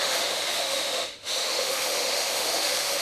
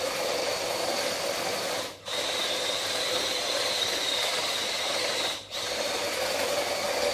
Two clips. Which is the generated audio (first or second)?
first